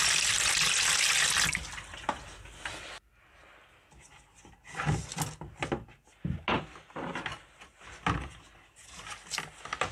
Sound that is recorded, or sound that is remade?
recorded